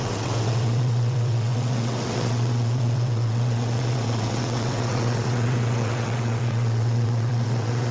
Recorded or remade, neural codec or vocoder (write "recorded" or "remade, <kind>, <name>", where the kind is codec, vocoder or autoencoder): remade, vocoder, WaveNeXt